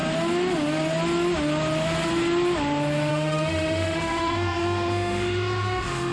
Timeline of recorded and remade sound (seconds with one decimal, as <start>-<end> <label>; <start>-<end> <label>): 0.0-3.1 recorded; 3.1-6.1 remade